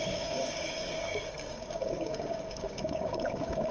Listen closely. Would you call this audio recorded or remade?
remade